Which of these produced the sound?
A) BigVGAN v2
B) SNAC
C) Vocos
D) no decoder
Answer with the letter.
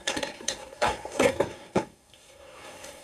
B